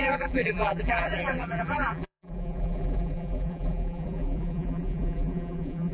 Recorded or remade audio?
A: remade